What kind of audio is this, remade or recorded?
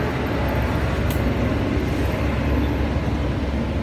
recorded